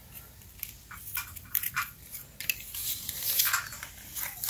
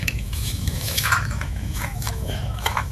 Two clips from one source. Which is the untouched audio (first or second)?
first